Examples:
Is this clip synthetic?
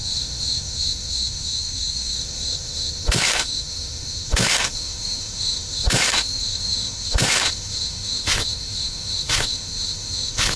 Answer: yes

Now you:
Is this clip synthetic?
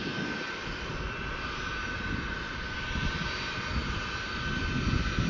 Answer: no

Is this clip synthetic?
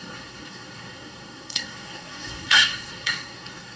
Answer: yes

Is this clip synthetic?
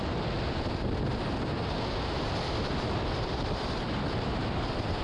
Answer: no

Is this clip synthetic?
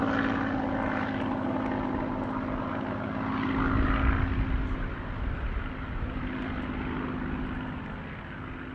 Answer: no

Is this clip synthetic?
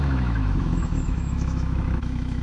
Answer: yes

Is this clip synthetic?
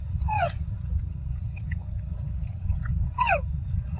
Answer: yes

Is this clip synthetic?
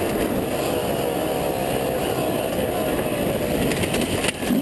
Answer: no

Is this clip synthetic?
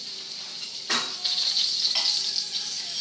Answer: no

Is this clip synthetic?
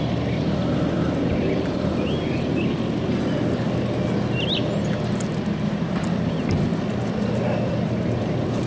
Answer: no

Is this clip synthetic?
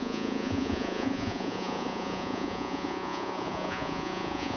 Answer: yes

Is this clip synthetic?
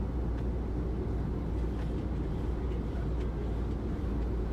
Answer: no